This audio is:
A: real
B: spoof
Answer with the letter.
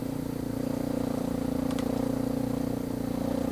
A